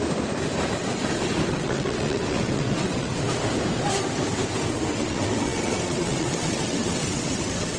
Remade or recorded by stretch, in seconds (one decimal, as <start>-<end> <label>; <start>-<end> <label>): 0.0-1.5 recorded; 1.5-3.1 remade; 3.1-4.9 recorded; 4.9-7.8 remade